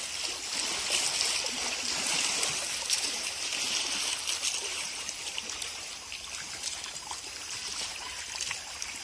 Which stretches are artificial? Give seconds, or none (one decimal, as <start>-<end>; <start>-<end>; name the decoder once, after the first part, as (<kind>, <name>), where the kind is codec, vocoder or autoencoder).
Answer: 4.7-5.9 (vocoder, BigVGAN v2)